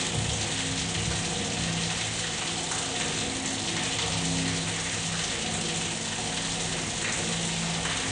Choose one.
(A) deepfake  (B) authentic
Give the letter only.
B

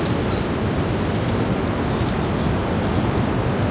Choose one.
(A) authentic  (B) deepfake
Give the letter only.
A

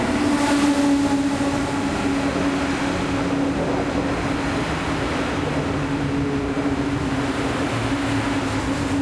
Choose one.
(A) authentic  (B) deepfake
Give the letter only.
A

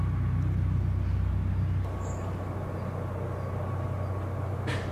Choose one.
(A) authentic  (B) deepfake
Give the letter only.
A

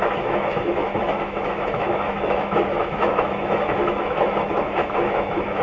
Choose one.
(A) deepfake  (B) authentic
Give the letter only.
A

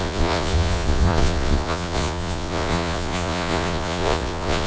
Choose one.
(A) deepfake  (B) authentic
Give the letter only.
A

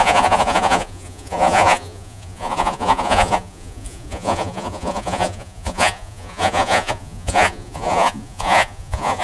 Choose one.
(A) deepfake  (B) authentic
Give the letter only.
A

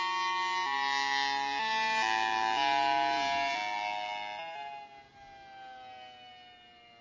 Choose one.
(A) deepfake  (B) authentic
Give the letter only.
B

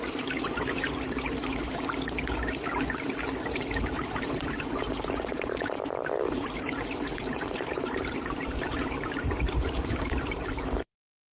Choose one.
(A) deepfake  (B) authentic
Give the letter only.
A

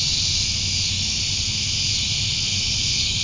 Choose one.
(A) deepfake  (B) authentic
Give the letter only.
B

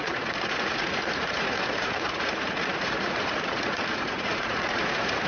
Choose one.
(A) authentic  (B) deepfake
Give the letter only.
B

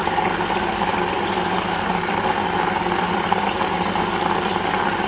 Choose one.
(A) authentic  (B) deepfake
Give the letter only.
A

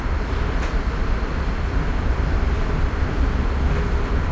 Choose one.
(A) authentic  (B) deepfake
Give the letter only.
A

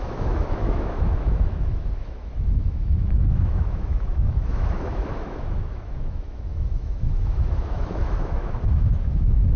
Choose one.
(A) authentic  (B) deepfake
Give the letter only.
B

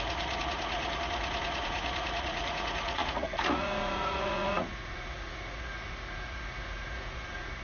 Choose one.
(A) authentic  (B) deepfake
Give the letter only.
B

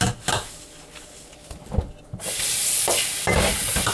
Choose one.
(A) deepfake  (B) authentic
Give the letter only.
B